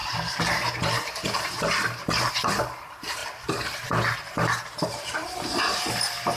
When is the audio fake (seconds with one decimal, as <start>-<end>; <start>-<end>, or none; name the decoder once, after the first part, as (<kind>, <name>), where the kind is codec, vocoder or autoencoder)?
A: 0.0-6.4 (vocoder, BigVGAN v2)